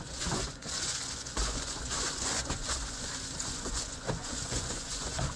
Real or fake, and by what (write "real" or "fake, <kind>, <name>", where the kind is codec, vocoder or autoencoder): fake, vocoder, Vocos